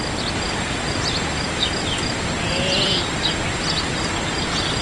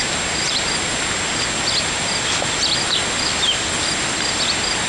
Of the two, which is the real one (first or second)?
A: second